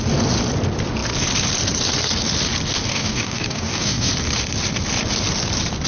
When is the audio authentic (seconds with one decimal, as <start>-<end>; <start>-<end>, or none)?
0.0-2.9; 4.1-5.9